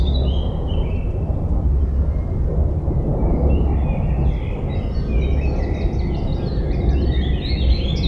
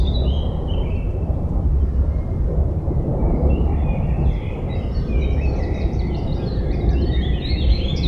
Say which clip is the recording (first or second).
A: first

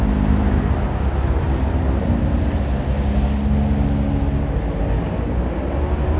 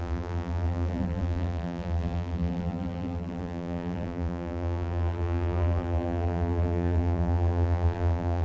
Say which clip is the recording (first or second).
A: first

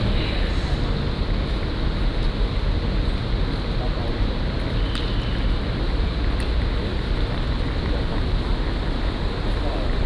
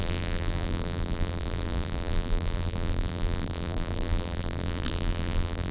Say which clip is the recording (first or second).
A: first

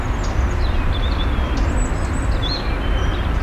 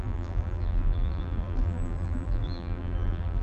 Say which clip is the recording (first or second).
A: first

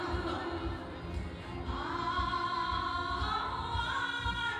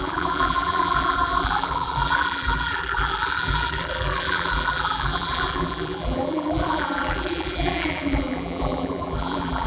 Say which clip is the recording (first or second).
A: first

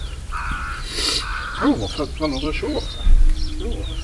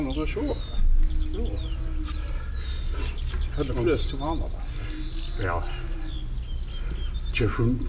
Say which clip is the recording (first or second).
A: second